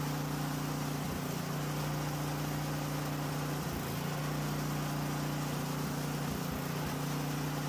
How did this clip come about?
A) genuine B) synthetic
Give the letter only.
A